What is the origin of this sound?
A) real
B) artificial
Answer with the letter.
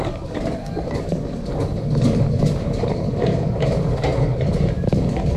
B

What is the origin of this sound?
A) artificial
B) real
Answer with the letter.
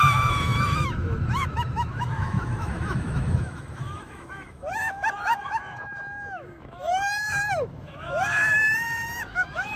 A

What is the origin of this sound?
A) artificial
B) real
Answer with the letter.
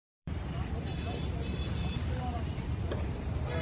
A